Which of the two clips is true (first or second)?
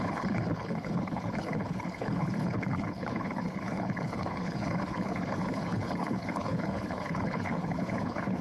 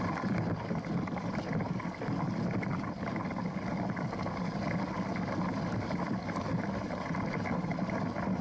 second